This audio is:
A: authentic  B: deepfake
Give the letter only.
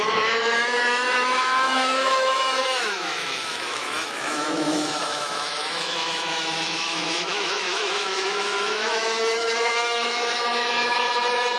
B